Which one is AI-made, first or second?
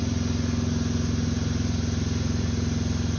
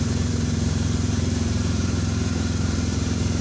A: second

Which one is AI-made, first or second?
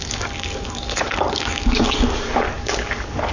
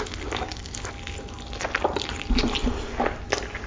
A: first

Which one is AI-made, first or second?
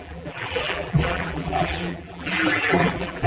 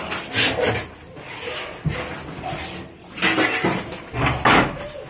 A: first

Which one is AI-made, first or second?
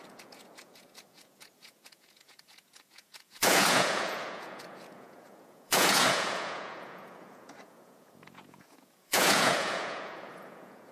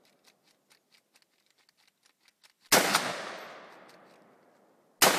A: first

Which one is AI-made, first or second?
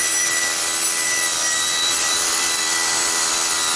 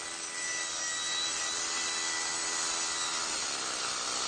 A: first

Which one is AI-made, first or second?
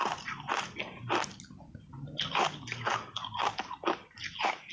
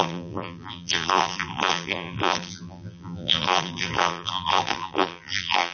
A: second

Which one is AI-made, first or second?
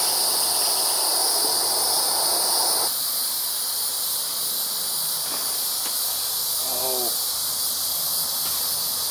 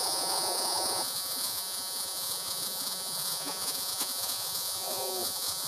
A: second